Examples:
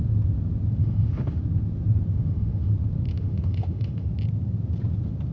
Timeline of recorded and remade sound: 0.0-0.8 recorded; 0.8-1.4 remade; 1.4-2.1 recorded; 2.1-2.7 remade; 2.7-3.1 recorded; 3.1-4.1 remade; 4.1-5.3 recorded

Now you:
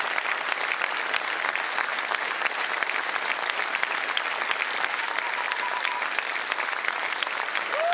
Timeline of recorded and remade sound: 0.0-7.9 recorded

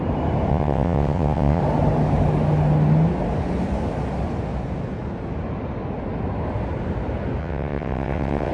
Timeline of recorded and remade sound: 0.0-0.5 recorded; 0.5-1.6 remade; 1.6-7.4 recorded; 7.4-8.5 remade

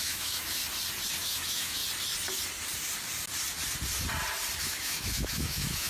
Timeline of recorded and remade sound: 0.0-0.6 remade; 0.6-1.2 recorded; 1.2-1.8 remade; 1.8-4.6 recorded; 4.6-5.9 remade

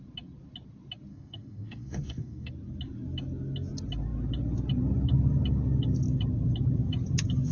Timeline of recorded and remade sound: 0.0-1.1 recorded; 1.1-2.5 remade; 2.5-7.5 recorded

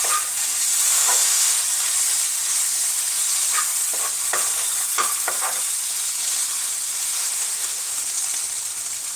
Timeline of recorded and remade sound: 0.0-1.0 recorded; 1.0-1.6 remade; 1.6-7.2 recorded; 7.2-7.9 remade; 7.9-9.2 recorded